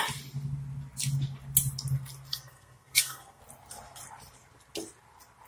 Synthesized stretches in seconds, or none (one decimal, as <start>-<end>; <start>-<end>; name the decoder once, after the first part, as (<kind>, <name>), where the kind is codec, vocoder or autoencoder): 2.3-3.4 (codec, SNAC)